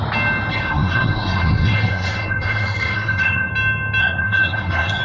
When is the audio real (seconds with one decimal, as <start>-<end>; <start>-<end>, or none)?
0.0-0.5; 3.5-4.0

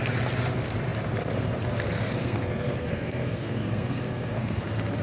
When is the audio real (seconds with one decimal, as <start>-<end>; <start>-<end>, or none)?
0.0-2.2; 4.6-5.0

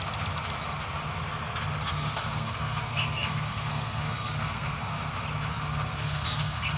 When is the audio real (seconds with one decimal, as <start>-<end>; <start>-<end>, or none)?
0.0-1.8; 5.1-5.5

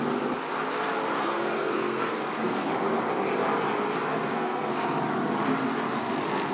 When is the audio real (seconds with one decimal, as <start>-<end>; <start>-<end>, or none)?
0.0-1.2; 2.7-4.2; 4.7-6.5

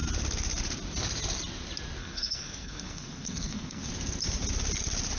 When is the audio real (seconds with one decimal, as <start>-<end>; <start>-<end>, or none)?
0.0-2.0; 3.9-5.2

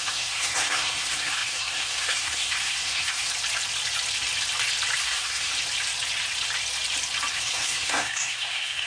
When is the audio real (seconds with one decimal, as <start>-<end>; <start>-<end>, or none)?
3.3-5.0; 5.5-7.3

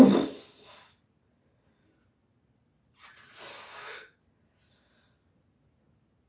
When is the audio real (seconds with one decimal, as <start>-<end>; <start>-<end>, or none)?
0.0-3.5; 4.2-6.3

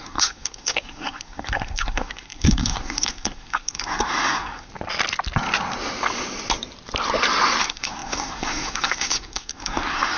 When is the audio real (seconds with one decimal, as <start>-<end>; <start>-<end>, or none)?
4.7-7.6